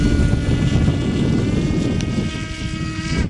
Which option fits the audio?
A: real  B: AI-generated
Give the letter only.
A